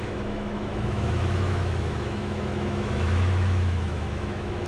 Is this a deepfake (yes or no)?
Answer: yes